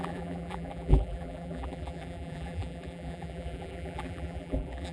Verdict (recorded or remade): remade